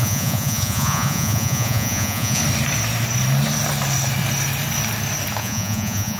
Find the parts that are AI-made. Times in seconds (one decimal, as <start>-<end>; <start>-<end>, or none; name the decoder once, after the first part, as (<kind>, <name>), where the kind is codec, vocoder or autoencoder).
0.0-2.4 (vocoder, Vocos); 5.4-6.2